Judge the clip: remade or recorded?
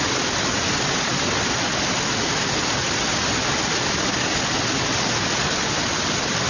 recorded